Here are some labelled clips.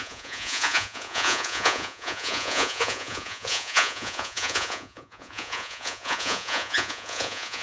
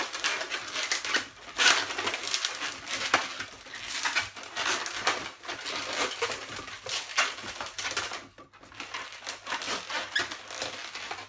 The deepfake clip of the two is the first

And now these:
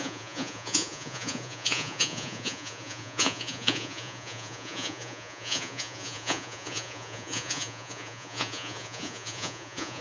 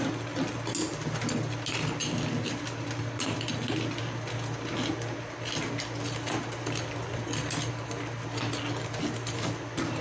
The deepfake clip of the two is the first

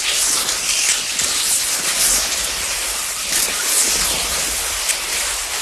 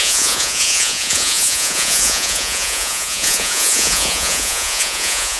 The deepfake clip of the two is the second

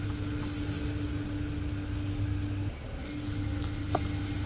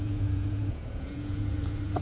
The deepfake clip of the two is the second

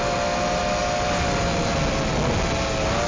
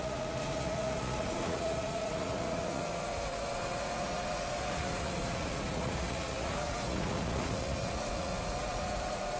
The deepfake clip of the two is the second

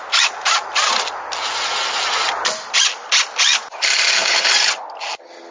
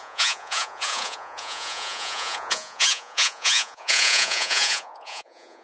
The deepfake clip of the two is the second